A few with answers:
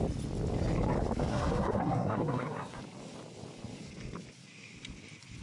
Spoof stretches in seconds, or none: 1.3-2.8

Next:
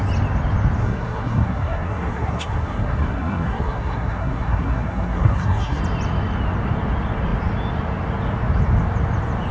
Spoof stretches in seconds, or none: 0.8-5.8

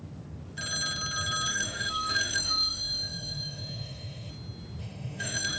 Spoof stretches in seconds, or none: 1.5-4.3; 4.8-5.6

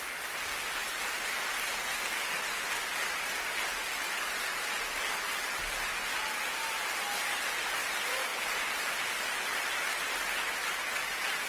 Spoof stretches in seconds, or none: 8.3-10.0

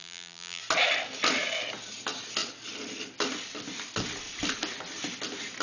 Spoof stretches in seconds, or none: 0.0-0.6

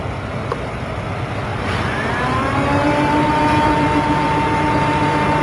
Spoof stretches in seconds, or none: 1.5-4.7

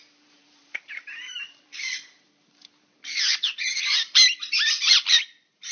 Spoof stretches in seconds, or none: 0.0-5.7

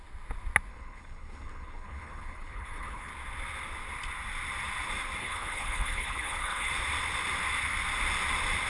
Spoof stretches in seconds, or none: 0.7-3.1; 5.2-6.7